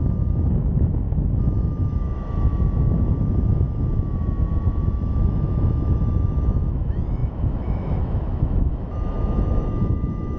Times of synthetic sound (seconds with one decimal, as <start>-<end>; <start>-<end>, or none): 0.0-10.4